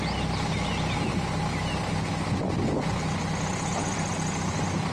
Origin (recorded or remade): recorded